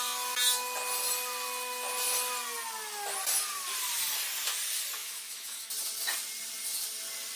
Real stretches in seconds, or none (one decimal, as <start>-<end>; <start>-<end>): 0.0-5.0; 5.7-7.4